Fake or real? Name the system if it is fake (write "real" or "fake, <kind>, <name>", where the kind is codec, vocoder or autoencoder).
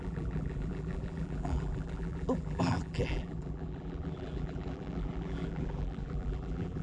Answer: fake, vocoder, BigVGAN v2